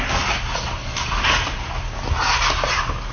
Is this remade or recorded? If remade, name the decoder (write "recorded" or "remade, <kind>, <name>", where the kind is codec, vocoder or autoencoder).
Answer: recorded